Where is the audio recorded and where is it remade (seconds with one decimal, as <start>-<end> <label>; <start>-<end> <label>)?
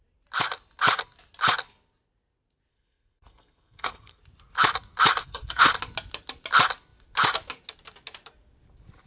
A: 0.0-2.7 recorded; 2.7-4.2 remade; 4.2-5.2 recorded; 5.2-5.7 remade; 5.7-9.1 recorded